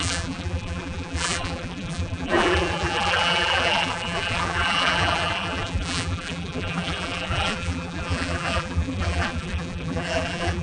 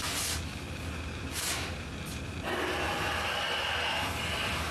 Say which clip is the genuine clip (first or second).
second